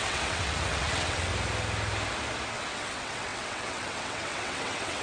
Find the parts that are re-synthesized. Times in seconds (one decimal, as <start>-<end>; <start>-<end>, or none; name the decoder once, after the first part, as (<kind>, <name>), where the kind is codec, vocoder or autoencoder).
0.0-1.3 (vocoder, WaveNeXt); 2.5-5.0